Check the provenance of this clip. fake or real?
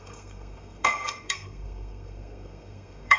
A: fake